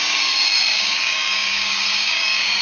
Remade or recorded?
remade